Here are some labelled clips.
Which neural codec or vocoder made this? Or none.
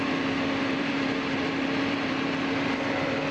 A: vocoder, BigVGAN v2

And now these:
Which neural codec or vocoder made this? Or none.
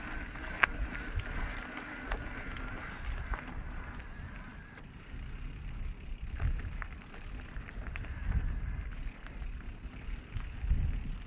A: none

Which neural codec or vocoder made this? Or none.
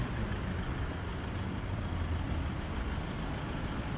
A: none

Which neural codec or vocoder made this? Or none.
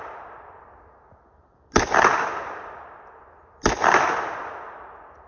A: none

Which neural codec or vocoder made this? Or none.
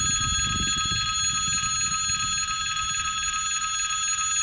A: none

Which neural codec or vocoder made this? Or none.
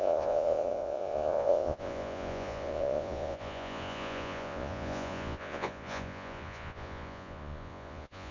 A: vocoder, Vocos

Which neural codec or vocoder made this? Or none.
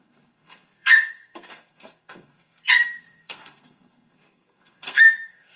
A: codec, SNAC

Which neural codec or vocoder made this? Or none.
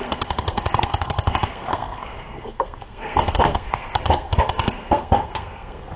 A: codec, SNAC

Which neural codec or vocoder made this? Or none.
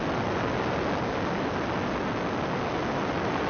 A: none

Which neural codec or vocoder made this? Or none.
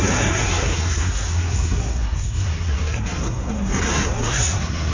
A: codec, SNAC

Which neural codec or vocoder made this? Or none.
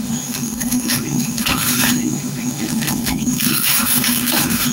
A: autoencoder, DAC-VAE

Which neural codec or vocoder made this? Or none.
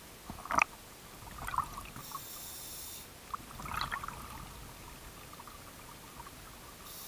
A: none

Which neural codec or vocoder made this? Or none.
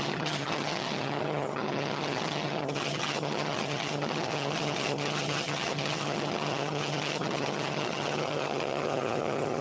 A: vocoder, HiFi-GAN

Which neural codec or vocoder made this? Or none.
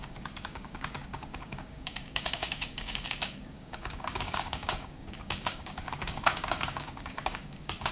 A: codec, DAC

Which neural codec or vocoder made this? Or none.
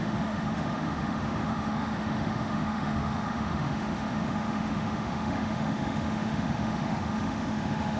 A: autoencoder, DAC-VAE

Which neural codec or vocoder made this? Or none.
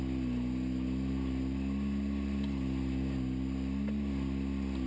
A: none